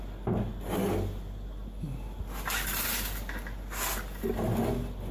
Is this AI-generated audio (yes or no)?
no